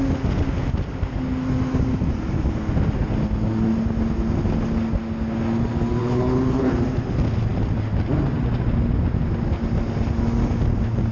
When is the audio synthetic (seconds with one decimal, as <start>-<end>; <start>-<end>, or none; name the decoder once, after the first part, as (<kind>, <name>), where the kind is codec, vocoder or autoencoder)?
6.0-6.7 (codec, HILCodec)